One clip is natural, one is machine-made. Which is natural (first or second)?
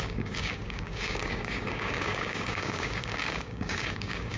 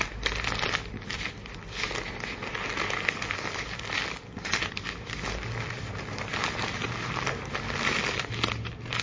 second